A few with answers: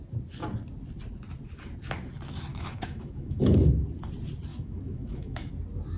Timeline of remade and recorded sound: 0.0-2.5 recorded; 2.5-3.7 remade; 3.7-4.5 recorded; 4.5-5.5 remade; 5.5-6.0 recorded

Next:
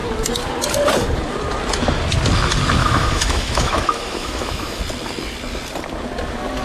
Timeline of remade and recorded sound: 0.0-2.8 recorded; 2.8-4.8 remade; 4.8-6.6 recorded

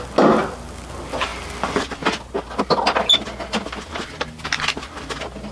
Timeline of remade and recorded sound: 0.0-5.5 recorded